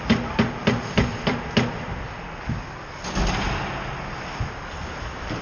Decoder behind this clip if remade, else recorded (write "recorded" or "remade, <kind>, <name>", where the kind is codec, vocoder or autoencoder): recorded